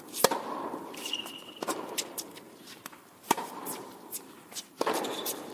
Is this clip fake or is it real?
fake